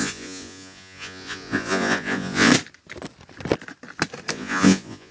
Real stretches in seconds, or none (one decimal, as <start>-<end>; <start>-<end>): 2.5-4.3